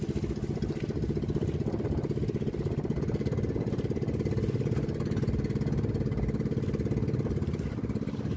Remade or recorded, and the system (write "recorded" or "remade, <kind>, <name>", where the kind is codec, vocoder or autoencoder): recorded